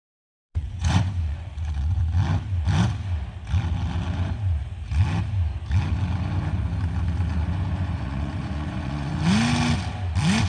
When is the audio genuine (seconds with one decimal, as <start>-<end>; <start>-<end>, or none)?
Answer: 0.0-0.4; 2.0-7.3; 9.1-10.5